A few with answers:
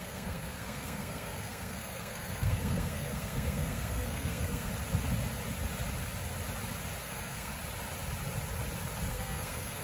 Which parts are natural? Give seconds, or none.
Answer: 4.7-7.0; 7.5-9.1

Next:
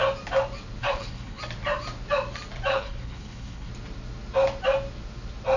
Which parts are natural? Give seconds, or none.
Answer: 0.0-0.8; 1.4-2.7; 3.7-5.6

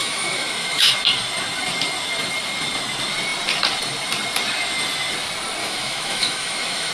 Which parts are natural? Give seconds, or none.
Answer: 0.9-5.6